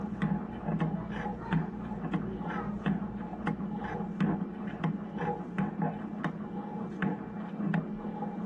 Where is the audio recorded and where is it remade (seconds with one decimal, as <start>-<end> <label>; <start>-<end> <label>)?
0.0-1.3 recorded; 1.3-3.1 remade; 3.1-8.5 recorded